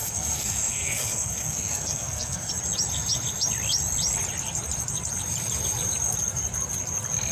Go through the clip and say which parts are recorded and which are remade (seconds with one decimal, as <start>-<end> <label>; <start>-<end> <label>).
0.0-2.5 remade; 2.5-7.3 recorded

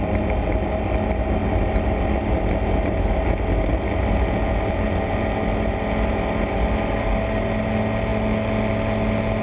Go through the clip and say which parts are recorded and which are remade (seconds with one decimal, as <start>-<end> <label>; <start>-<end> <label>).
0.0-9.4 recorded